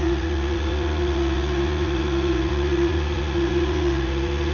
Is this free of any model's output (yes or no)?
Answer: no